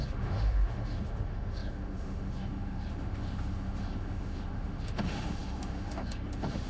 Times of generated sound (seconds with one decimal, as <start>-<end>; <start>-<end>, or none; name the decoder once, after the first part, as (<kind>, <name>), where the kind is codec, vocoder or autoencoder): 0.0-6.7 (autoencoder, DAC-VAE)